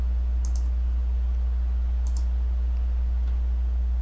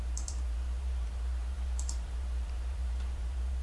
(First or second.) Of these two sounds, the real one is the first